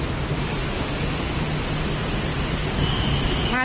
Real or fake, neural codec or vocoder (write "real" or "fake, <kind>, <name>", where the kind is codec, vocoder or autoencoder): real